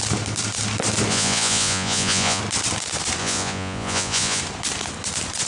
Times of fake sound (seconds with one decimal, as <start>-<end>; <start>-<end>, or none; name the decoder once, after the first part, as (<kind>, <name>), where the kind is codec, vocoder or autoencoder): 1.1-2.4 (vocoder, Vocos); 3.2-4.4